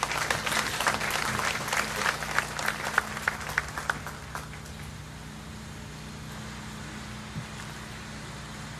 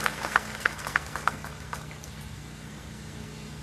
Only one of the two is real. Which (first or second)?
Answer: first